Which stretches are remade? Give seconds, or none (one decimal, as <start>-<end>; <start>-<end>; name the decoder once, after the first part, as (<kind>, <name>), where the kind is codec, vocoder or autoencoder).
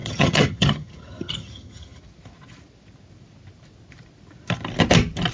0.0-2.0 (vocoder, HiFi-GAN)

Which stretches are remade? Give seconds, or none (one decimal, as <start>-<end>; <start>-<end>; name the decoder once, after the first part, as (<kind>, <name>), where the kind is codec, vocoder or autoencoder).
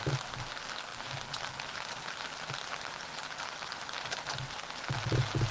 none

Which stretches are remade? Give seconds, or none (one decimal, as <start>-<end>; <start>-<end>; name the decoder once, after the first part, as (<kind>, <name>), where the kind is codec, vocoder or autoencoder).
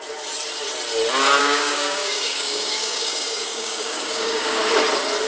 1.4-4.6 (codec, DAC)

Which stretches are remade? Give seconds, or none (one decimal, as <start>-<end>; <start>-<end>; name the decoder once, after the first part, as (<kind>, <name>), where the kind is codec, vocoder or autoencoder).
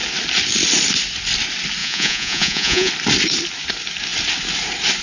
1.8-2.9 (vocoder, Vocos)